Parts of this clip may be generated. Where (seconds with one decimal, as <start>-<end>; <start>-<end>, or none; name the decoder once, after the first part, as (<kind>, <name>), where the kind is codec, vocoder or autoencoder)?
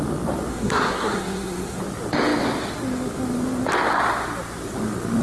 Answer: 0.5-1.8 (codec, SNAC)